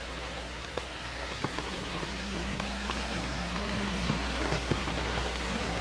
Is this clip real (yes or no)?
no